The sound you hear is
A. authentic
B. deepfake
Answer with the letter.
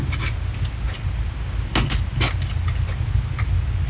A